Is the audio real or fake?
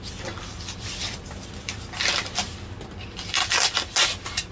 real